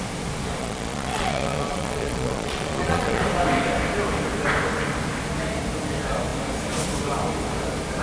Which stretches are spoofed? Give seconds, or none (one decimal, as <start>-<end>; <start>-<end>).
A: 0.6-3.2